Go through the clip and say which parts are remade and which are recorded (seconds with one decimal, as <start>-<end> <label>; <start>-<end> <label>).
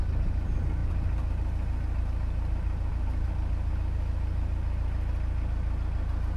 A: 0.0-6.4 recorded